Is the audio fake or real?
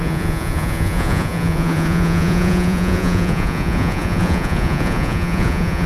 fake